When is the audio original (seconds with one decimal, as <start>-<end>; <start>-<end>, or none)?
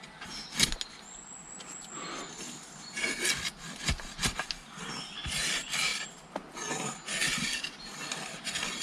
0.0-8.8